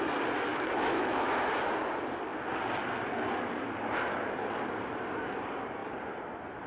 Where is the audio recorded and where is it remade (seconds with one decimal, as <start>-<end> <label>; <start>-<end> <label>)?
0.0-0.5 recorded; 0.5-1.3 remade; 1.3-6.7 recorded